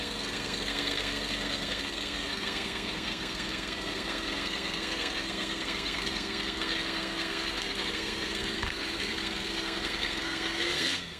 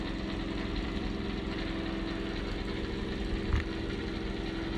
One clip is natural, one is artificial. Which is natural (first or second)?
second